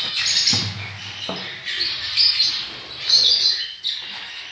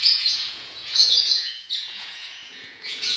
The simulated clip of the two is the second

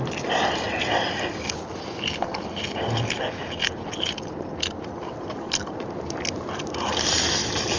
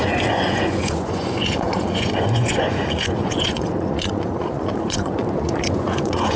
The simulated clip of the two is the second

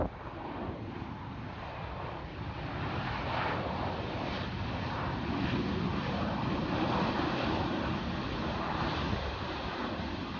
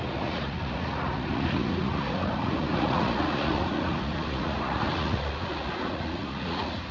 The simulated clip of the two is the second